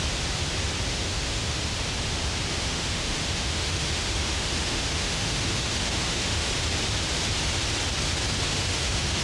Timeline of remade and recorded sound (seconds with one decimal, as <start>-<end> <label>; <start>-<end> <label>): 0.0-0.9 recorded; 0.9-1.6 remade; 1.6-2.5 recorded; 2.5-6.5 remade; 6.5-8.5 recorded; 8.5-9.2 remade